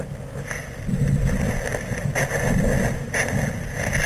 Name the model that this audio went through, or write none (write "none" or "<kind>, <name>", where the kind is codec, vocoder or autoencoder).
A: none